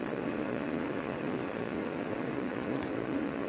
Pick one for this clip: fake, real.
fake